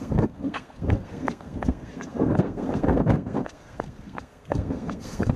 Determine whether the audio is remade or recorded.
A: remade